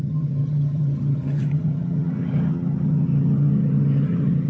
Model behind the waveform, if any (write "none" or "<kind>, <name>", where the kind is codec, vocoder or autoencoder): vocoder, HiFi-GAN